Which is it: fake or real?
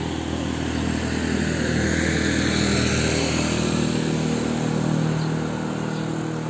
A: real